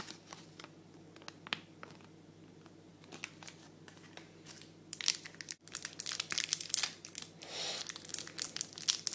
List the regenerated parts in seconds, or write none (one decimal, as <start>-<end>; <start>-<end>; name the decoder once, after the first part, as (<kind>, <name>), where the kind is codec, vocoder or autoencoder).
2.9-7.7 (vocoder, BigVGAN v2)